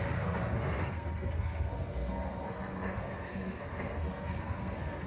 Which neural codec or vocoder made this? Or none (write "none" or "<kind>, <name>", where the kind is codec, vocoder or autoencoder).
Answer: codec, SNAC